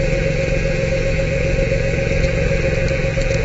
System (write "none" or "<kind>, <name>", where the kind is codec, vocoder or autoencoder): none